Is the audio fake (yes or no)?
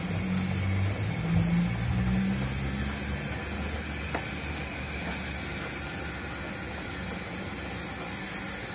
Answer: no